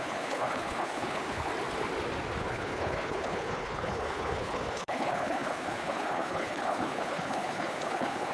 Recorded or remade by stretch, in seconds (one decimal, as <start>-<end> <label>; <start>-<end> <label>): 0.0-1.5 remade; 1.5-2.4 recorded; 2.4-8.3 remade